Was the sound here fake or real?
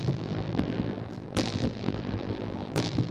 fake